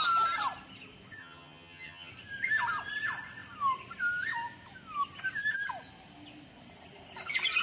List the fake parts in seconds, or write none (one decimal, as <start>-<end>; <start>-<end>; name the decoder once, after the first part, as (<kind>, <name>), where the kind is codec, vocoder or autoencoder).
1.2-2.1 (vocoder, HiFi-GAN)